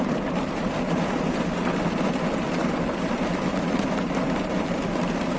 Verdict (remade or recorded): remade